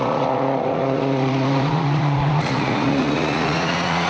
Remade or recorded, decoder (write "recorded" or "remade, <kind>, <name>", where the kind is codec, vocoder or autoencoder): remade, vocoder, Vocos